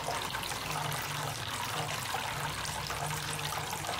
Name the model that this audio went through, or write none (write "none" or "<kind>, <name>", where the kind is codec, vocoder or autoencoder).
none